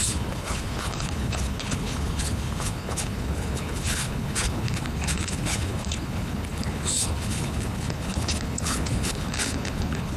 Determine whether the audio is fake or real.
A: fake